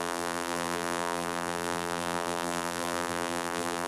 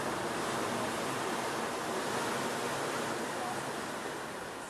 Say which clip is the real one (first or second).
second